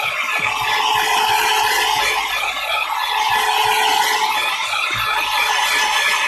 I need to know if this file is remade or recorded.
recorded